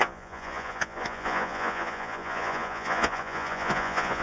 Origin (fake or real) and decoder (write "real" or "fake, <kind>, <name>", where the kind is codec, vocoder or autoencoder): fake, vocoder, Vocos